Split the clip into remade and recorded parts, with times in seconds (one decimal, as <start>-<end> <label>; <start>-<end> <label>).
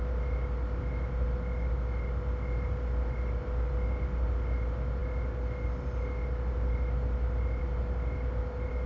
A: 0.0-8.9 recorded